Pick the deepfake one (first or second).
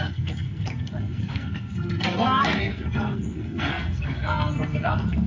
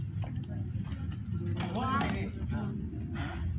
first